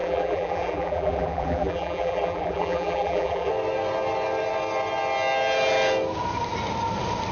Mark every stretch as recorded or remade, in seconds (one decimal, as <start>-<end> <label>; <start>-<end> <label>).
0.0-3.5 remade; 3.5-7.3 recorded